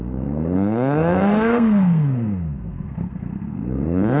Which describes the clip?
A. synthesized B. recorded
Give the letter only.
A